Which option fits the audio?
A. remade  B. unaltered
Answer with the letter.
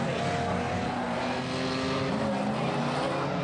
B